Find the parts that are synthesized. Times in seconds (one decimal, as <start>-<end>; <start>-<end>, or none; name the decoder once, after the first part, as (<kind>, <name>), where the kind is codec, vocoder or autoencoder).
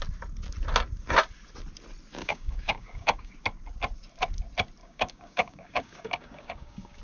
2.2-3.3 (codec, DAC); 4.8-7.0